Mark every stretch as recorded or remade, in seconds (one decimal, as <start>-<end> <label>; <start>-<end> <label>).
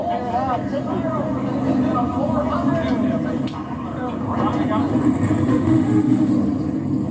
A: 0.0-5.5 recorded; 5.5-6.3 remade; 6.3-7.1 recorded